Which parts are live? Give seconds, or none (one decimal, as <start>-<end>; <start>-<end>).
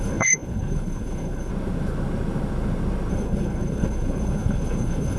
1.5-3.1